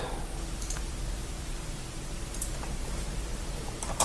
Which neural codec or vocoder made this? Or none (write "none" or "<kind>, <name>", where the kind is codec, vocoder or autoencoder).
vocoder, BigVGAN v2